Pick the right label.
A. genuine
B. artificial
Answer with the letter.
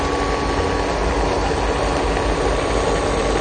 A